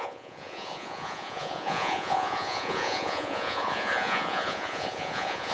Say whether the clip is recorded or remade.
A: remade